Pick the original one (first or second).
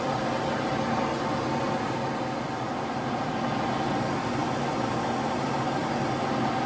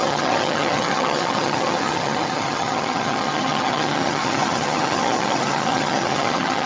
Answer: first